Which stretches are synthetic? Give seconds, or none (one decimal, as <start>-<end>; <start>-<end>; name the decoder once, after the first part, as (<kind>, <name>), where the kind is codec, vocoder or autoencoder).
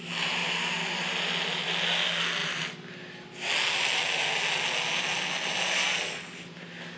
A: none